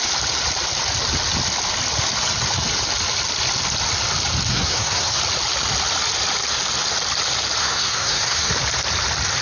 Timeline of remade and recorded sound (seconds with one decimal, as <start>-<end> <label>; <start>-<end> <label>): 0.0-4.5 recorded; 4.5-5.2 remade; 5.2-7.6 recorded; 7.6-8.5 remade; 8.5-9.4 recorded